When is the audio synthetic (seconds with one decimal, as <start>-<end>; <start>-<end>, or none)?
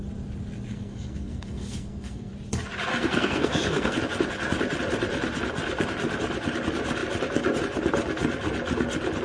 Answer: 0.7-2.3; 2.9-4.0